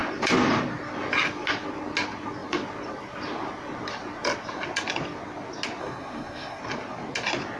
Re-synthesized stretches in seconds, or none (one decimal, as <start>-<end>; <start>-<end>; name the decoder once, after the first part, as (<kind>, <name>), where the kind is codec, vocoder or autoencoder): 5.8-6.6 (codec, SNAC)